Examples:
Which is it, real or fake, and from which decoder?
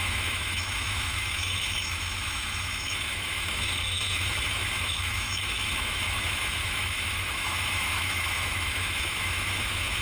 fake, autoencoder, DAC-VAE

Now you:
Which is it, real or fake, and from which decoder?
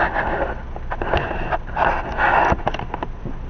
real